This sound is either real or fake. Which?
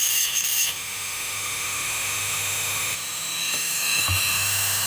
fake